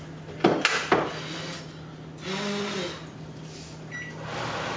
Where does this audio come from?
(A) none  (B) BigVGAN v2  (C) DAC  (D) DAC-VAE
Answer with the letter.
A